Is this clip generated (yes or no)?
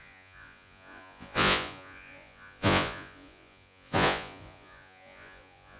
yes